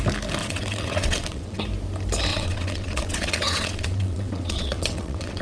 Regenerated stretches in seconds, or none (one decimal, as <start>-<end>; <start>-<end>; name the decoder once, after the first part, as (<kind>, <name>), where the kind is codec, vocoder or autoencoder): 0.4-1.6 (vocoder, WaveNeXt); 2.3-5.4

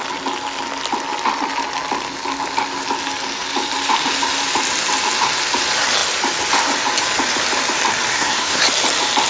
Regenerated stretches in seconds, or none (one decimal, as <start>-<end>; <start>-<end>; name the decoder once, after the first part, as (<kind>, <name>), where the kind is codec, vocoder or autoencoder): 8.1-8.6 (codec, SNAC)

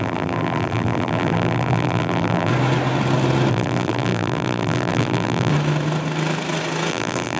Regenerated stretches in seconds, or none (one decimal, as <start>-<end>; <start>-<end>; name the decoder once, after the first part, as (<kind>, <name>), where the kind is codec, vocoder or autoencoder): 0.0-2.5 (vocoder, BigVGAN v2); 3.5-5.5; 6.9-7.4

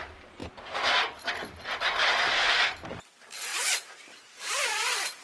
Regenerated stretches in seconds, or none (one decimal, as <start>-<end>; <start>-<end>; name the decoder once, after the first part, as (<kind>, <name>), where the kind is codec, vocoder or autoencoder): 0.0-0.4 (vocoder, BigVGAN v2); 1.5-3.5; 4.6-5.2

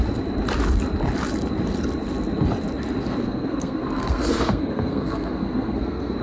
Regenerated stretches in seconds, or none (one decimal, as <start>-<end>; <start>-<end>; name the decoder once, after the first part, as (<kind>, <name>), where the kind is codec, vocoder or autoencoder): 3.2-6.2 (codec, SNAC)